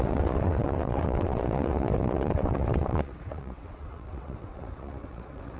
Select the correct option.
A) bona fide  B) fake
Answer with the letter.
B